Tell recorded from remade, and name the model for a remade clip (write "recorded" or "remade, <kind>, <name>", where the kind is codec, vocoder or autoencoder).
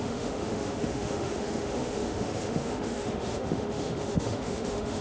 remade, autoencoder, DAC-VAE